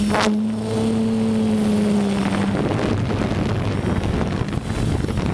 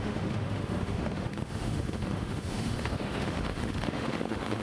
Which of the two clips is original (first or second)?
first